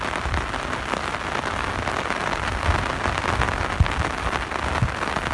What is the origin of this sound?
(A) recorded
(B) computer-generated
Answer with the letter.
A